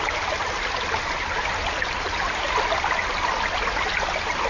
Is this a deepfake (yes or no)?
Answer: no